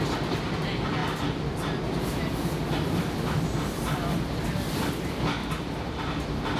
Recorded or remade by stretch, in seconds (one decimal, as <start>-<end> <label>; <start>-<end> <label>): 0.0-5.4 recorded; 5.4-6.1 remade; 6.1-6.6 recorded